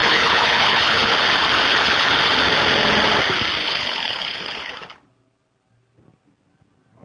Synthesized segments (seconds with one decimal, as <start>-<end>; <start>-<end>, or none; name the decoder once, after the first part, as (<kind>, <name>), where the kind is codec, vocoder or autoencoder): 0.0-1.1 (codec, HILCodec); 1.7-2.2; 3.6-4.7